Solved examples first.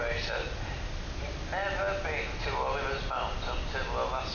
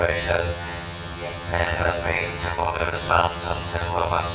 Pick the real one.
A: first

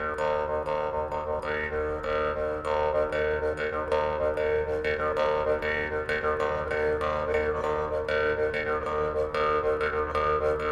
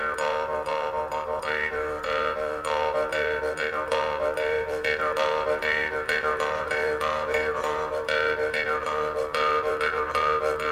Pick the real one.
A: first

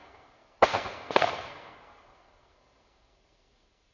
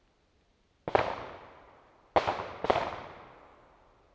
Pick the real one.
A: second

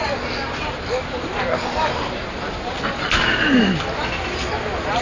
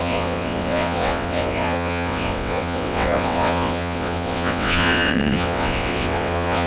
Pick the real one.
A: first